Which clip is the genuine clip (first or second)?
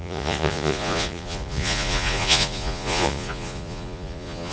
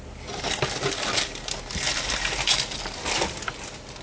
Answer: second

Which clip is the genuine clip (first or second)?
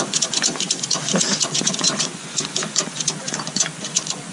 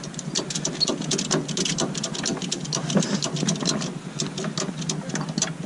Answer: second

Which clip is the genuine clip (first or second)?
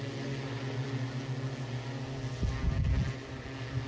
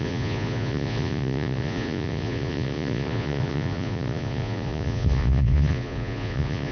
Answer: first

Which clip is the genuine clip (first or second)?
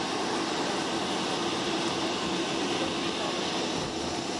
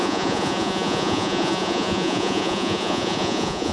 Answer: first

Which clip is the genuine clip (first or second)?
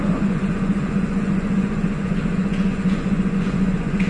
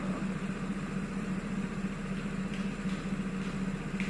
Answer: second